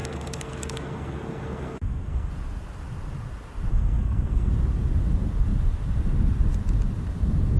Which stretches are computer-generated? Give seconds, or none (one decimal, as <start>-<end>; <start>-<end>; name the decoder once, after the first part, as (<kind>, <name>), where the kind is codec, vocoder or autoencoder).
0.0-2.3 (codec, SNAC); 3.7-4.5